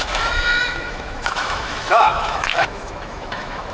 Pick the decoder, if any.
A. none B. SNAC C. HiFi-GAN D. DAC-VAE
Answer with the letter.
D